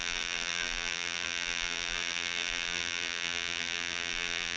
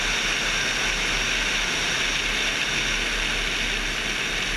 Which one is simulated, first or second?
first